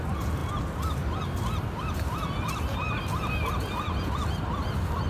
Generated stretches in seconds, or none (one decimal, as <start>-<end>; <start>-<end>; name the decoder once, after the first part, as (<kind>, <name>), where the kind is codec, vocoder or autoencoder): none